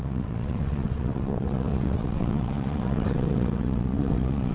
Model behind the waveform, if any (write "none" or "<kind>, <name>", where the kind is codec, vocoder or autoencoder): vocoder, WaveNeXt